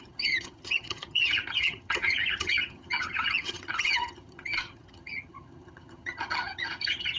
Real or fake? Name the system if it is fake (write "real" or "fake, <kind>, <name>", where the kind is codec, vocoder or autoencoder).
fake, vocoder, HiFi-GAN